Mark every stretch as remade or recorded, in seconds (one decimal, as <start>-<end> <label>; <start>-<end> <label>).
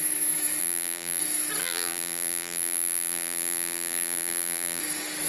0.0-0.6 recorded; 0.6-1.2 remade; 1.2-1.6 recorded; 1.6-4.8 remade; 4.8-5.3 recorded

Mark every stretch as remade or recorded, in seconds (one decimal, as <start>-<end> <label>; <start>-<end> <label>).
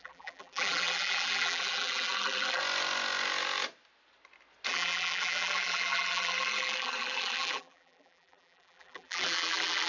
0.0-2.6 remade; 2.6-4.7 recorded; 4.7-9.9 remade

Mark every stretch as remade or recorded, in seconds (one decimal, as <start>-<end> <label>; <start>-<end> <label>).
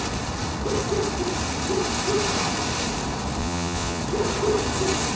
0.0-3.4 recorded; 3.4-4.0 remade; 4.0-5.2 recorded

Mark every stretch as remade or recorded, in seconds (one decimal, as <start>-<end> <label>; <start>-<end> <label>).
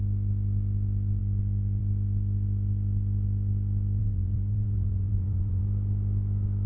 0.0-4.0 recorded; 4.0-5.6 remade; 5.6-6.7 recorded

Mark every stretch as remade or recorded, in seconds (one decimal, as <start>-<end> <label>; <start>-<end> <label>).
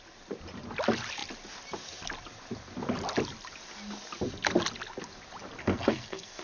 0.0-5.6 recorded; 5.6-6.4 remade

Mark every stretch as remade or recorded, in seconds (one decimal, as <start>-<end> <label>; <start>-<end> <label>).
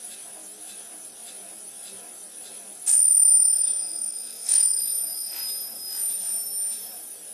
0.0-3.6 recorded; 3.6-4.8 remade; 4.8-7.3 recorded